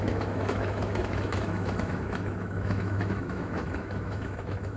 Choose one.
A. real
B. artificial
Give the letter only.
B